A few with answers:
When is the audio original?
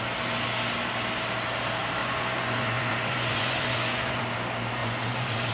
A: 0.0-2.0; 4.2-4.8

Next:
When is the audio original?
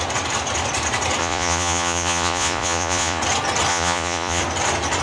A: 0.0-1.2; 3.2-3.7; 4.4-5.0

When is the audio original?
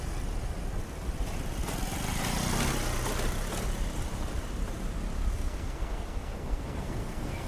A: 0.0-5.3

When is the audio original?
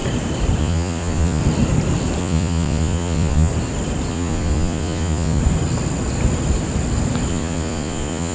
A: 0.0-0.6; 1.4-2.2; 3.5-4.1; 5.4-7.3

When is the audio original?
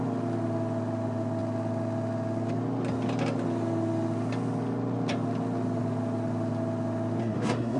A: 0.0-7.2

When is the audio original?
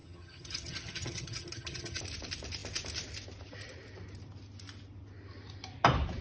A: 2.0-6.2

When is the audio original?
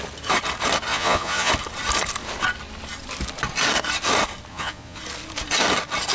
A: 0.0-0.9; 1.5-4.5; 5.0-6.1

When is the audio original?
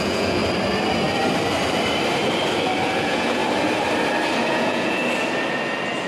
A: 0.4-3.0; 3.4-4.5; 5.0-6.1